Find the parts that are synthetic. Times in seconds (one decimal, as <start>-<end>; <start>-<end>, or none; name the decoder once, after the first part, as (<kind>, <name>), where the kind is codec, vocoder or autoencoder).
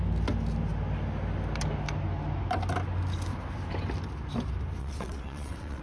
4.8-5.8 (vocoder, WaveNeXt)